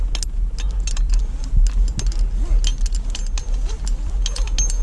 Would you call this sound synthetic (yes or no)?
no